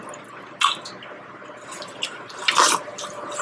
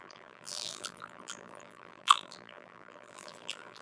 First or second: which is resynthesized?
second